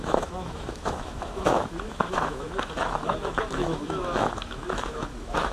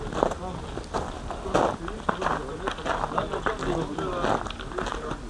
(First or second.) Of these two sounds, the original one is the second